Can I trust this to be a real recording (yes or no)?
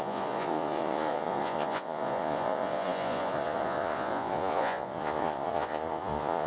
no